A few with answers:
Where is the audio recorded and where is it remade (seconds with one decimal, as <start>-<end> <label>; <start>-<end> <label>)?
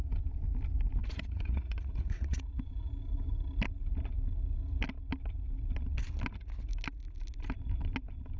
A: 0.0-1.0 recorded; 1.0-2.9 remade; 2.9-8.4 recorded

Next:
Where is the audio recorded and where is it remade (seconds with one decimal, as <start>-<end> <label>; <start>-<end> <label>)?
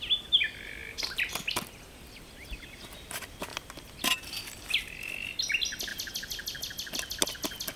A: 0.0-0.8 recorded; 0.8-2.2 remade; 2.2-7.8 recorded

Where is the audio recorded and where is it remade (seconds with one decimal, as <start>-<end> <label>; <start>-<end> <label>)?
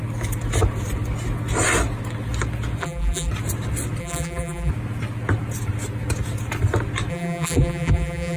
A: 0.0-2.8 recorded; 2.8-3.3 remade; 3.3-4.0 recorded; 4.0-4.7 remade; 4.7-7.1 recorded; 7.1-8.4 remade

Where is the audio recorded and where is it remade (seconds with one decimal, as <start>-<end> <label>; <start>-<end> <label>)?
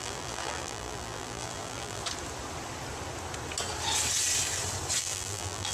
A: 0.0-2.0 remade; 2.0-5.0 recorded; 5.0-5.7 remade